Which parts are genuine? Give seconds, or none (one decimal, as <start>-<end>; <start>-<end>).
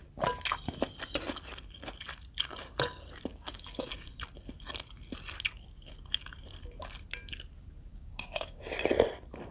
0.0-3.3; 3.9-7.9; 8.6-9.5